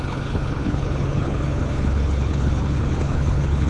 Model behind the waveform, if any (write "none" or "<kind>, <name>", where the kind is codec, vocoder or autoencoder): codec, HILCodec